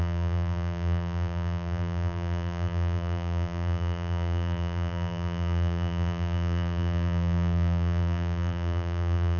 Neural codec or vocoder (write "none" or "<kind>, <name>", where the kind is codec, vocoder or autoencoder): vocoder, BigVGAN v2